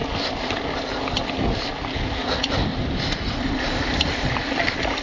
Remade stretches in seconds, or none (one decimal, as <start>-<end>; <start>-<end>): 2.7-3.5